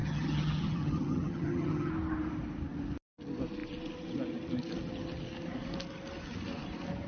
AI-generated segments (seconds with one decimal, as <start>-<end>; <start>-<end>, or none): 0.0-1.9